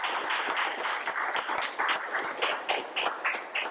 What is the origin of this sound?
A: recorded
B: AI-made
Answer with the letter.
A